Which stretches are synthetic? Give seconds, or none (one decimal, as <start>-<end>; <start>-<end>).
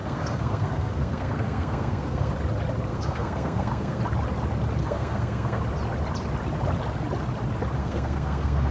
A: 0.0-2.3; 2.9-4.0; 4.8-5.6; 7.8-8.7